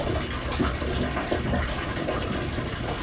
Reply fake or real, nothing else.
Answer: real